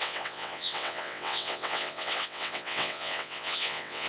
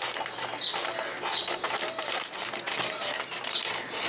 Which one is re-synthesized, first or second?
first